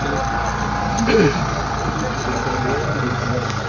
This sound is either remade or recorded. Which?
recorded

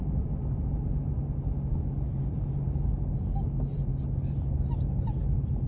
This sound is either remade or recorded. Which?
recorded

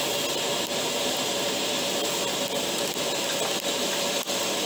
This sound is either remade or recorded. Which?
recorded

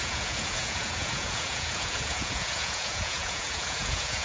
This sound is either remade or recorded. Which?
remade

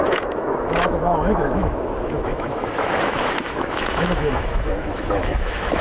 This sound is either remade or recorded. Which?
remade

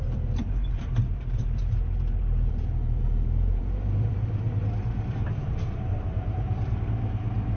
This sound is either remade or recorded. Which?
remade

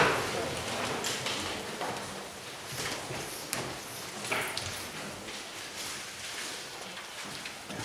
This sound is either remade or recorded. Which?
recorded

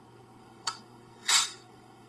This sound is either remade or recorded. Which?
remade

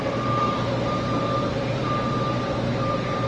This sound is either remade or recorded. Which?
remade